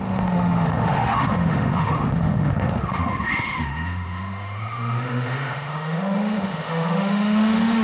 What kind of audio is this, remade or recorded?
remade